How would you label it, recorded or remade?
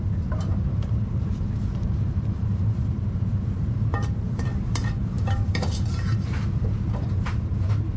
remade